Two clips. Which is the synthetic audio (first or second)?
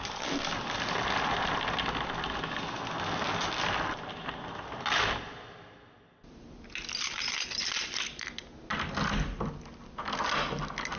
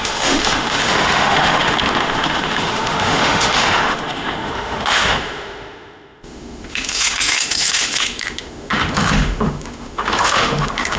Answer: second